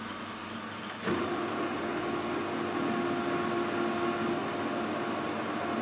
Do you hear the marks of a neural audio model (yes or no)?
no